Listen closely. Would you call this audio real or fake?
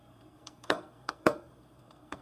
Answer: fake